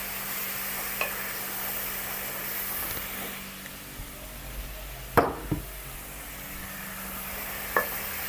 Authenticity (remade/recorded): recorded